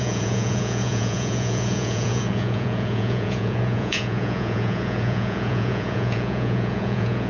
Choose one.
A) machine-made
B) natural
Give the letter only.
A